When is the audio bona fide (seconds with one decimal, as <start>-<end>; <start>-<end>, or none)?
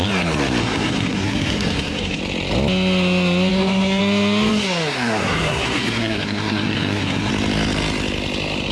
0.0-0.6; 2.2-3.5; 4.0-4.5; 7.3-8.7